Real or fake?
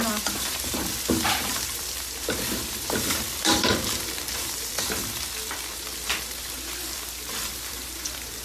fake